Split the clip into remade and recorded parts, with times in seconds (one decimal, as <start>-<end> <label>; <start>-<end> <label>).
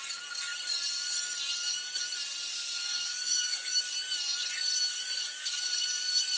0.0-2.5 recorded; 2.5-3.8 remade; 3.8-4.9 recorded; 4.9-5.7 remade; 5.7-6.4 recorded